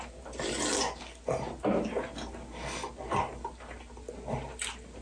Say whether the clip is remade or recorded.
recorded